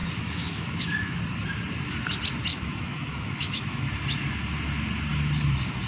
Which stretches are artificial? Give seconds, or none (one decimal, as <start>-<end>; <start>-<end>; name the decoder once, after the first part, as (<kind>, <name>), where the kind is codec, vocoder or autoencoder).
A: 0.0-1.2 (autoencoder, DAC-VAE); 2.5-3.9